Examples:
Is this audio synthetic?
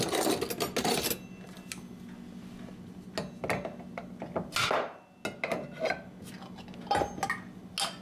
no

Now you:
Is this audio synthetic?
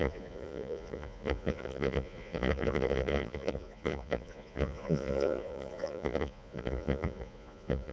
yes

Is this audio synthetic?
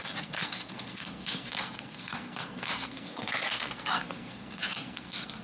yes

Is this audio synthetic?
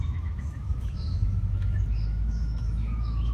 yes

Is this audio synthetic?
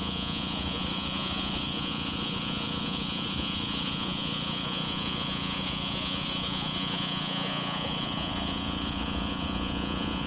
yes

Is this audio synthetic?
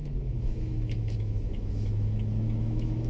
yes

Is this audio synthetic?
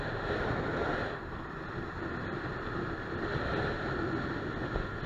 no